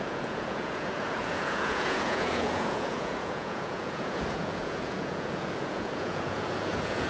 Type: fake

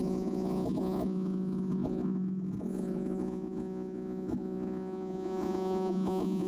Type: fake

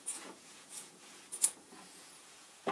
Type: fake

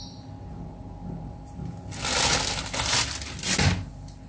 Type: real